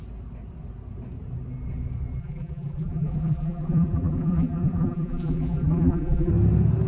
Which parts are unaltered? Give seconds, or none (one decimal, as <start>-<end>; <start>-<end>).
0.0-2.2; 6.3-6.9